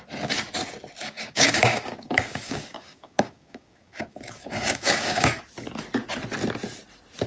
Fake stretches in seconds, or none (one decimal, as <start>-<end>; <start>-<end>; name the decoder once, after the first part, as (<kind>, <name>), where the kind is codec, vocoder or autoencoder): 1.0-5.4 (codec, DAC)